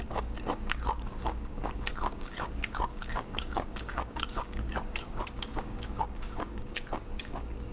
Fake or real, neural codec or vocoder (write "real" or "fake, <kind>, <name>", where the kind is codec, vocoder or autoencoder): fake, codec, DAC